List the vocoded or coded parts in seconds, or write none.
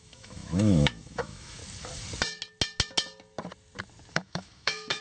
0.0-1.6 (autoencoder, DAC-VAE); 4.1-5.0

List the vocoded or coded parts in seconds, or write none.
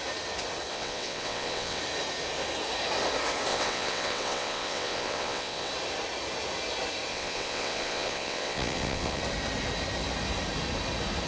0.7-1.8 (vocoder, WaveNeXt); 3.5-5.7; 7.1-9.2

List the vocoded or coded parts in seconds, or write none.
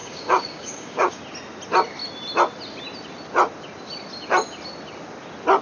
0.0-1.2 (codec, DAC)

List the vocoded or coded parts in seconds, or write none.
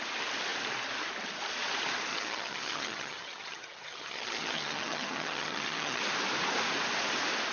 2.1-6.0 (vocoder, HiFi-GAN)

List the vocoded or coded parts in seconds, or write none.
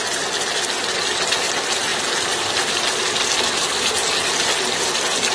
none